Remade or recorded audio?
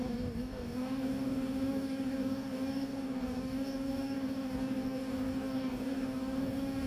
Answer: remade